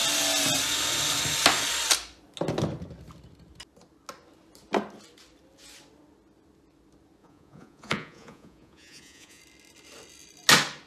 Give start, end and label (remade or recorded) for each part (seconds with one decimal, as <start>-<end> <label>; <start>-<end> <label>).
0.0-7.2 recorded; 7.2-9.4 remade; 9.4-10.9 recorded